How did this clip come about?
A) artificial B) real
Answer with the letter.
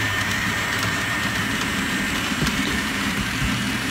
A